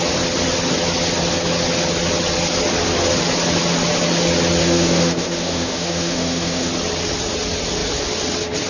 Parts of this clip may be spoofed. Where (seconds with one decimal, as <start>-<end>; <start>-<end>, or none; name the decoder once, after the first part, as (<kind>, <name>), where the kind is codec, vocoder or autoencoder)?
4.6-6.7 (autoencoder, DAC-VAE)